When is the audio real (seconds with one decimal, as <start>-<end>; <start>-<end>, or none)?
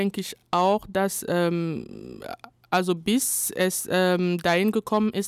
0.0-5.3